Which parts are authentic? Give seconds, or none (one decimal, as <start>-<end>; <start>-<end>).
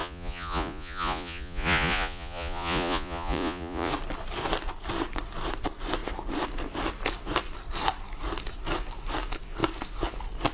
3.9-10.5